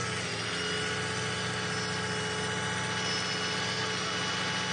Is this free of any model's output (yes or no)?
yes